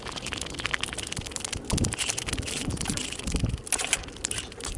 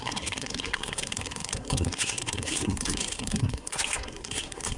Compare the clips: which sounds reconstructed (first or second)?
second